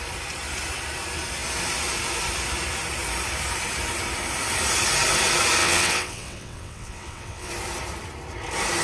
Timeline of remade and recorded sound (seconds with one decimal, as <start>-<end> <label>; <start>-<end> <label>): 0.0-5.6 recorded; 5.6-7.5 remade; 7.5-8.8 recorded